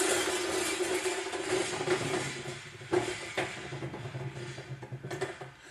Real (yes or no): no